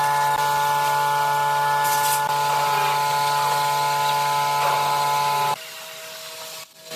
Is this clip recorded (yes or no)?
yes